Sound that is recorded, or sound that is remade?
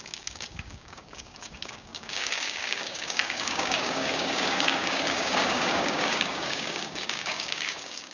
remade